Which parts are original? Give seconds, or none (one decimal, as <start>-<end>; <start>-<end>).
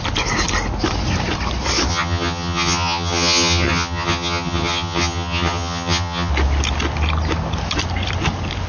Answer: 0.0-1.9; 6.3-8.7